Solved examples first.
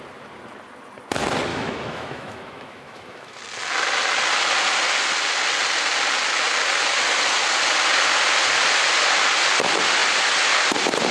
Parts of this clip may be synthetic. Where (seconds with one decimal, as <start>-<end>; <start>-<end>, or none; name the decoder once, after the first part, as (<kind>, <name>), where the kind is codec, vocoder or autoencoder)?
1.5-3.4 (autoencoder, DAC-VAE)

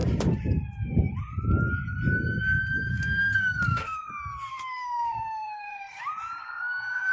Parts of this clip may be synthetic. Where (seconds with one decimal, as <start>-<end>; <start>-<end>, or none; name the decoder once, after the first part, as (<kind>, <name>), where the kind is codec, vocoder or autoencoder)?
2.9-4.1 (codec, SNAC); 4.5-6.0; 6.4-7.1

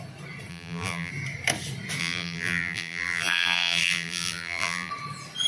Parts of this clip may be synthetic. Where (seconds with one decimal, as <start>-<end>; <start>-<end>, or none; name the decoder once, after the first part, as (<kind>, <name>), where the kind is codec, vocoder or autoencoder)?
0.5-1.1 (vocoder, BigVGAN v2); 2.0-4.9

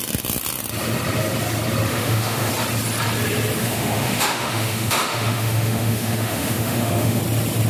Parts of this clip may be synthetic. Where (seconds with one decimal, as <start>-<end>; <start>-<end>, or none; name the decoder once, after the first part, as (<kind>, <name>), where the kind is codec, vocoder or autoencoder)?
1.9-2.5 (autoencoder, DAC-VAE); 3.6-7.2

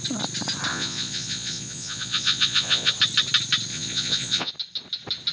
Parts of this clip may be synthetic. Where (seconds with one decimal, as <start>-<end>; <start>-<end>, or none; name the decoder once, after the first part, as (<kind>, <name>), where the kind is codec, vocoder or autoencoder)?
0.7-2.9 (vocoder, Vocos); 3.7-4.5

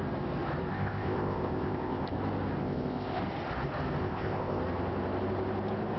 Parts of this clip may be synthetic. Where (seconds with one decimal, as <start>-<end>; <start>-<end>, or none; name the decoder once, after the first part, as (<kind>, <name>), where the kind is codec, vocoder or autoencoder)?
0.7-2.2 (codec, ZipCodec); 2.6-3.2; 4.0-4.6